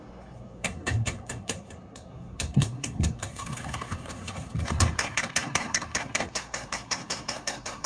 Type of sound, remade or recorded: remade